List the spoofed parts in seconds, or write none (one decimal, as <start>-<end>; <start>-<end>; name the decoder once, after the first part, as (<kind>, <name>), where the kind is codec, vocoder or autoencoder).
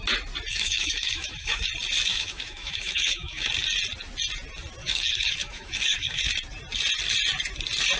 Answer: 0.5-1.7 (autoencoder, DAC-VAE); 2.1-3.5; 4.8-6.2